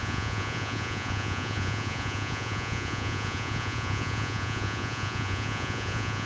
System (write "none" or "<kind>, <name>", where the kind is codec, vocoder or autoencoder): vocoder, Vocos